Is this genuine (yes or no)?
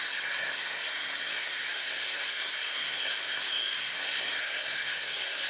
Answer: no